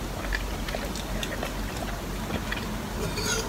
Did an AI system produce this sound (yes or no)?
no